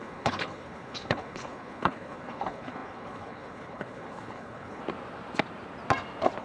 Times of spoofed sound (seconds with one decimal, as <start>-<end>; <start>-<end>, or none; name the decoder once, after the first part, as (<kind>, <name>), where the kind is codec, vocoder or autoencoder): 0.0-4.8 (codec, HILCodec)